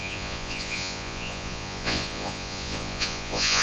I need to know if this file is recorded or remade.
remade